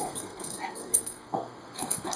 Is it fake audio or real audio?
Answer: fake